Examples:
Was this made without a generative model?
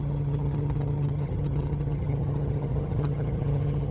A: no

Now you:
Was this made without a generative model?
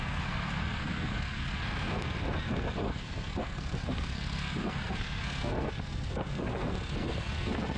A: no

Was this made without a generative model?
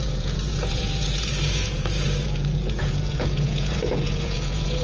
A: no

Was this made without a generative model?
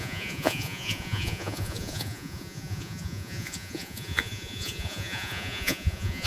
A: no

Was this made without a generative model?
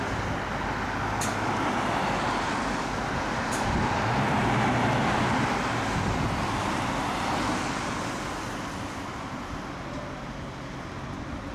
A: yes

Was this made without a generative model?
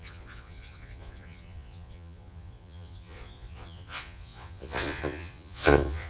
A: no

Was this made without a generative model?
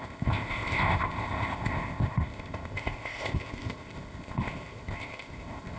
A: no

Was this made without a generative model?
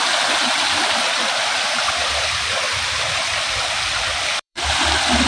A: no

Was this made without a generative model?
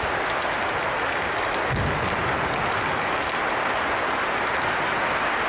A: yes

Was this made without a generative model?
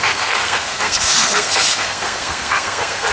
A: no